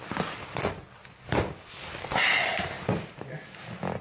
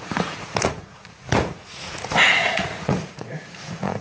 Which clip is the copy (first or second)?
second